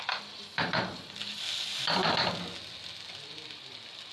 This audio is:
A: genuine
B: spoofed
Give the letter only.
A